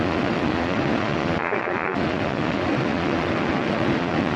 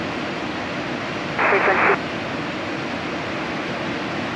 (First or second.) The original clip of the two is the second